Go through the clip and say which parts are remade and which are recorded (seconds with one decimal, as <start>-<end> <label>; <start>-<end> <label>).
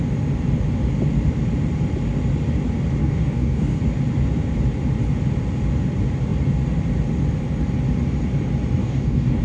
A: 0.0-3.0 recorded; 3.0-3.8 remade; 3.8-8.8 recorded; 8.8-9.4 remade